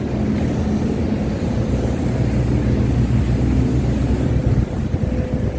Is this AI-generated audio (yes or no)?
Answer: no